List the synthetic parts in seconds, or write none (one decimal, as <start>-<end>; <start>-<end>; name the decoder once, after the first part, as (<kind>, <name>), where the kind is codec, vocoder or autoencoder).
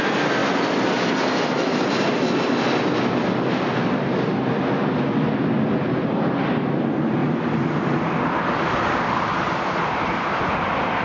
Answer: 7.2-10.5 (vocoder, BigVGAN v2)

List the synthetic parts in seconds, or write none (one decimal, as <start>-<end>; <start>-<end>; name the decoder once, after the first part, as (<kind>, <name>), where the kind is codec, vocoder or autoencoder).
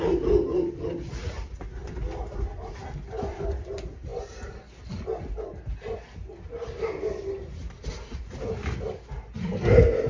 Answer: none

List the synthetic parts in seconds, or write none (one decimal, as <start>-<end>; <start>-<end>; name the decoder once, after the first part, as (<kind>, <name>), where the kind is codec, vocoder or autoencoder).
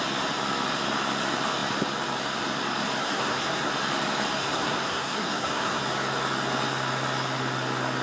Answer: 3.0-3.7 (codec, SNAC); 4.4-5.8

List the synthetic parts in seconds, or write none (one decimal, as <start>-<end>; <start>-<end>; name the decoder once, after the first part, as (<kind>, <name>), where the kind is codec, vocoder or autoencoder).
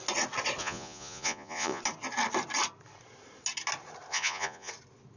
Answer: 0.6-1.8 (vocoder, Vocos); 4.1-4.7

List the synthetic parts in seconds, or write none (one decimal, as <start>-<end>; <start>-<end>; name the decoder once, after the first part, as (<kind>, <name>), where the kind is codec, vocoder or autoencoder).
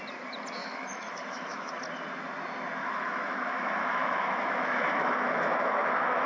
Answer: 0.6-1.7 (autoencoder, DAC-VAE); 2.8-6.3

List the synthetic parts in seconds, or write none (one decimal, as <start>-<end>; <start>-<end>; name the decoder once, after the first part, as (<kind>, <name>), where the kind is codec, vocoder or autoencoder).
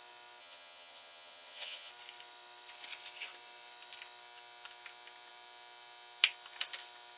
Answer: 0.4-1.9 (vocoder, HiFi-GAN)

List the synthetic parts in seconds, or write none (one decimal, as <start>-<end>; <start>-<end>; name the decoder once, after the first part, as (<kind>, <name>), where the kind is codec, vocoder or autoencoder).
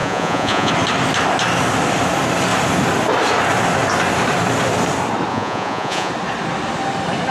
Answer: 0.0-0.7 (vocoder, Vocos); 5.3-6.1